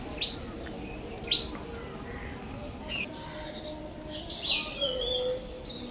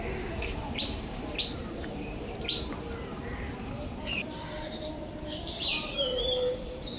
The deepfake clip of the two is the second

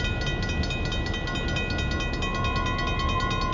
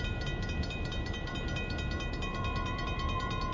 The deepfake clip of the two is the second